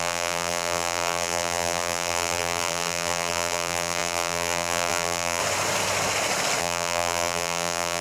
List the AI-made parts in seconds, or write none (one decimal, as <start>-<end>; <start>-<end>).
0.0-5.4; 6.6-8.0